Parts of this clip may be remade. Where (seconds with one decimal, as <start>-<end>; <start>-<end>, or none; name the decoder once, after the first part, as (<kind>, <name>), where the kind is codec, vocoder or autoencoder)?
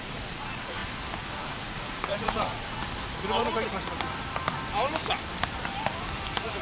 0.0-0.8 (vocoder, Vocos); 1.4-2.8